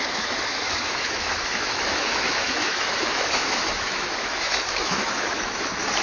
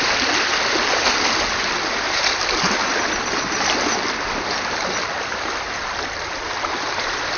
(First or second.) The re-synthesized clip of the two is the first